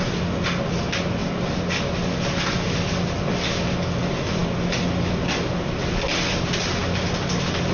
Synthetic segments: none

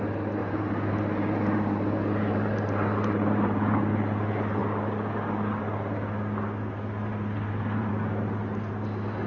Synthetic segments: 0.4-3.8; 7.1-7.9